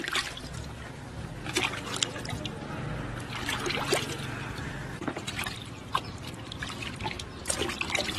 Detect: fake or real fake